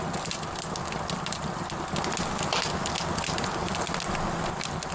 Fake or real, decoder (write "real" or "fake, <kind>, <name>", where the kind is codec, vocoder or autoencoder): real